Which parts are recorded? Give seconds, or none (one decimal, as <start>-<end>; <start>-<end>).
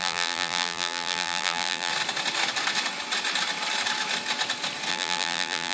1.9-4.9